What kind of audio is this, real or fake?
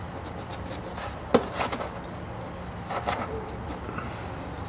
real